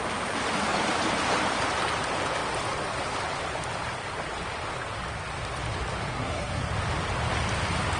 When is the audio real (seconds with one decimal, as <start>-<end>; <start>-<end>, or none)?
0.0-6.1; 6.7-8.0